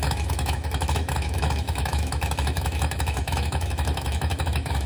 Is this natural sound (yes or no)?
no